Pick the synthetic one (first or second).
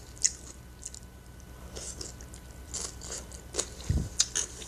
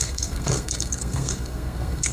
second